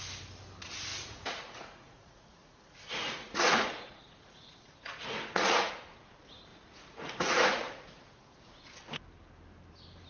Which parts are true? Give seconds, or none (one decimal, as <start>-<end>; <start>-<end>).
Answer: 0.0-0.9; 5.7-6.5; 8.5-10.1